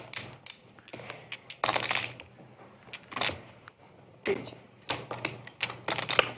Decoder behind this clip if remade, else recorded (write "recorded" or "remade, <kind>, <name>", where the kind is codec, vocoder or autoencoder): recorded